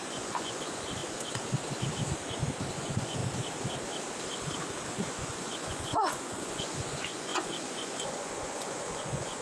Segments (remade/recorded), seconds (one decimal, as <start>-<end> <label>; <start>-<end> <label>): 0.0-1.0 remade; 1.0-2.7 recorded; 2.7-3.2 remade; 3.2-5.0 recorded; 5.0-9.4 remade